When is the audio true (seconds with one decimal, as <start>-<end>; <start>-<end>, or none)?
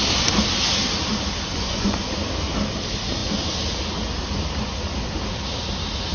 0.0-1.5; 2.1-6.1